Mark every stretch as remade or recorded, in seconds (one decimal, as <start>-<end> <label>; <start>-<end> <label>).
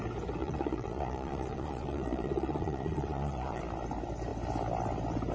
0.0-0.4 recorded; 0.4-3.6 remade; 3.6-5.3 recorded